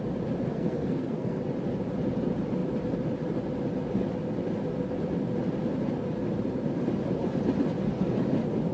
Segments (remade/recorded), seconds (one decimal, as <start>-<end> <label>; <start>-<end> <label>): 0.0-0.5 recorded; 0.5-1.4 remade; 1.4-8.7 recorded